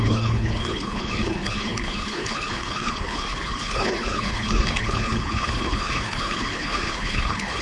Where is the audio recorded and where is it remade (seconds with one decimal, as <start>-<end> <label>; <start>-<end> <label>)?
0.0-7.6 remade